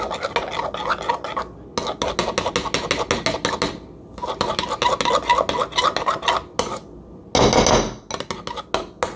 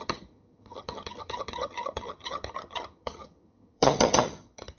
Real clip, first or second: first